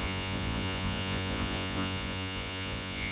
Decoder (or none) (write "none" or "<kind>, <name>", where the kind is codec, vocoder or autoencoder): vocoder, Vocos